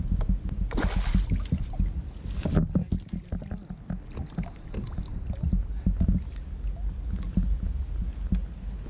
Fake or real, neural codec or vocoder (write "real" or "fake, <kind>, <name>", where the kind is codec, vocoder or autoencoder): real